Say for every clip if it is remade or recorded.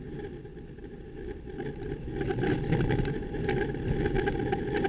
recorded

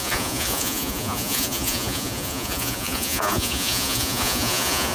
remade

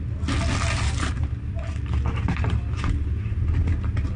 remade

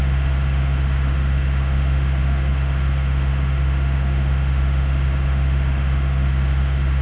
remade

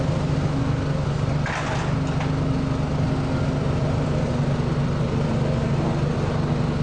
recorded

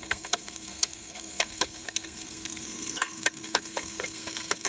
remade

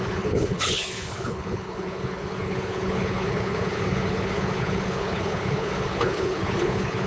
remade